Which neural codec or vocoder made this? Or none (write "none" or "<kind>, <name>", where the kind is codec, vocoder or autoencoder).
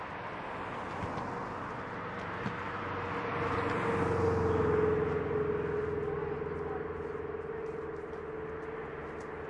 none